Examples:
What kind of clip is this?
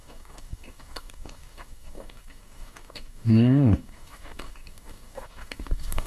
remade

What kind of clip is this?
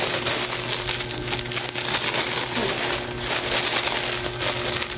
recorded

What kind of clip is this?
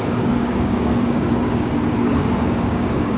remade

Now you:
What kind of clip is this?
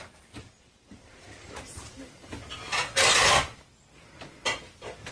recorded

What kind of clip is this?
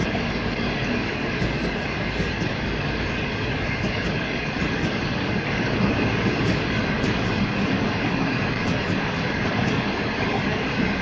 remade